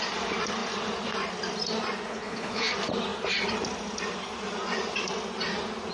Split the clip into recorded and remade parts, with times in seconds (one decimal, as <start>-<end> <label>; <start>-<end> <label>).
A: 0.0-2.1 recorded; 2.1-2.7 remade; 2.7-5.9 recorded